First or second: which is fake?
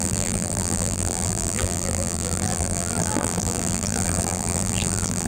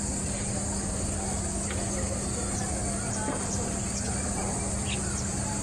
first